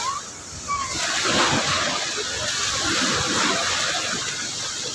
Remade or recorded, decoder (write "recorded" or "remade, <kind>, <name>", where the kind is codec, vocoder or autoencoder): recorded